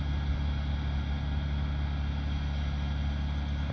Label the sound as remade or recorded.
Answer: recorded